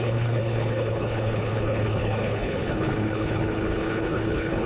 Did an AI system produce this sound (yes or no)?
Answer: yes